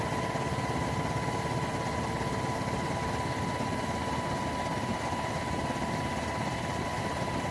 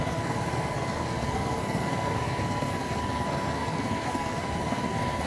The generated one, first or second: second